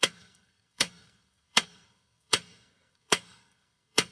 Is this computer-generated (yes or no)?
yes